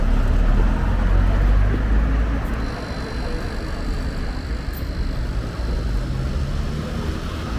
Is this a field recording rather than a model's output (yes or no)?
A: yes